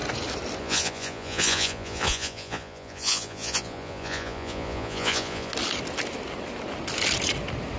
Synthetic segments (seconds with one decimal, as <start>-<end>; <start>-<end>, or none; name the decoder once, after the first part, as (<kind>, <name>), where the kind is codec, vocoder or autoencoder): 0.6-5.5 (vocoder, Vocos)